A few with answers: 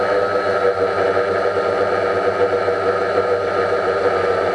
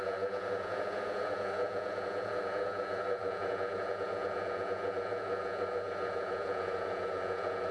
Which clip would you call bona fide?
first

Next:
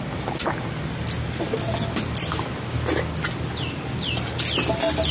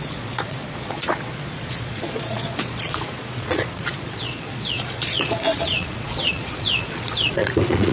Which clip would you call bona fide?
first